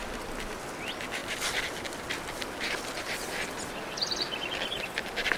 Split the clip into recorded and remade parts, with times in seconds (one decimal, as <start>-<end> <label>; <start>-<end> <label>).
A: 0.0-5.4 recorded